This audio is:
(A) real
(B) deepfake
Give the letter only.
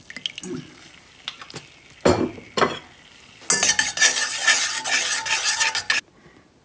A